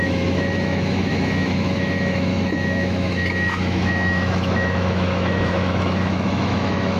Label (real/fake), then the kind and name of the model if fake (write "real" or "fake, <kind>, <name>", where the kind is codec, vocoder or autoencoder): fake, autoencoder, DAC-VAE